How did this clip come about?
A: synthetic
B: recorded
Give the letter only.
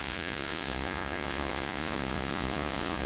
A